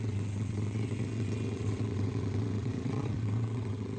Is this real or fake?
fake